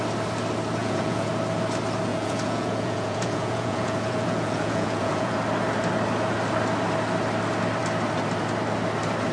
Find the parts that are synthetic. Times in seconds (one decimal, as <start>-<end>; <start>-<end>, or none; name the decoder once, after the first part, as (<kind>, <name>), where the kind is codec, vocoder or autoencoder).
0.8-1.3 (vocoder, Vocos); 2.1-5.4